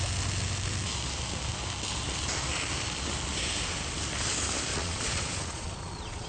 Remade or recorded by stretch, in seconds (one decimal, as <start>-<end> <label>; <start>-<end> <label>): 0.0-4.7 recorded; 4.7-6.3 remade